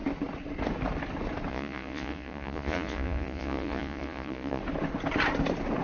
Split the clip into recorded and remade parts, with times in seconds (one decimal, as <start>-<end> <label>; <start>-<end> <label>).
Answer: 0.0-1.5 recorded; 1.5-4.6 remade; 4.6-5.8 recorded